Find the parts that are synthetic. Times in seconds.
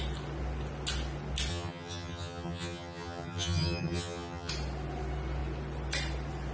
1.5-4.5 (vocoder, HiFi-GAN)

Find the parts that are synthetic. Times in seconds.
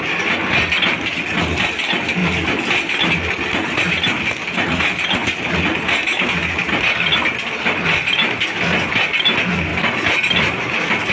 none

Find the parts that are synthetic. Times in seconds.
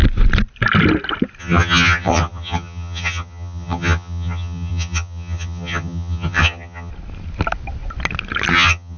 1.4-6.9 (vocoder, HiFi-GAN); 8.5-9.0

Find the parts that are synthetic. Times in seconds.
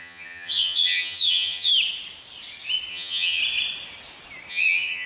0.0-1.7 (vocoder, HiFi-GAN); 2.9-3.4; 4.5-5.1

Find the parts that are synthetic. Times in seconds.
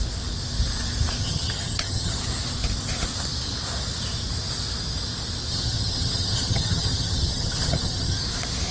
1.2-2.2 (vocoder, HiFi-GAN); 5.5-8.2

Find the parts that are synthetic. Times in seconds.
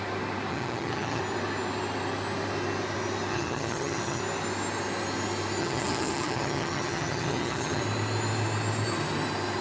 0.5-1.2 (vocoder, HiFi-GAN); 3.3-4.2; 5.6-7.8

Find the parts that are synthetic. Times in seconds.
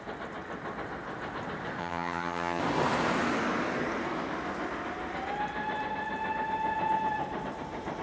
1.8-2.6 (vocoder, HiFi-GAN)